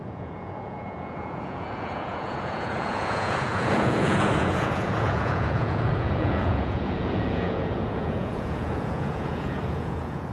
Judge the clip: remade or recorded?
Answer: remade